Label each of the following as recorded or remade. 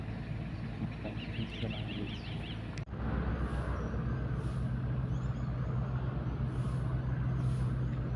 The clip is recorded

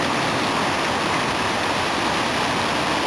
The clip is remade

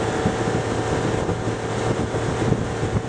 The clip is recorded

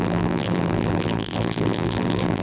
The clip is remade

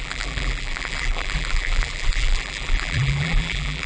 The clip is remade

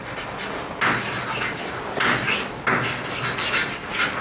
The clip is recorded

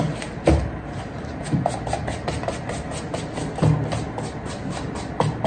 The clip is recorded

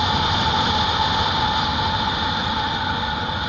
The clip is recorded